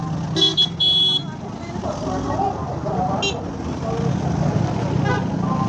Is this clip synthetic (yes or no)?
no